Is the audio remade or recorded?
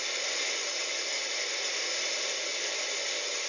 recorded